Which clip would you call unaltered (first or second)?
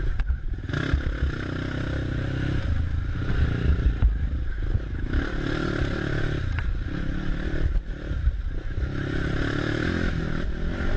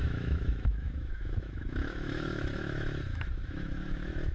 first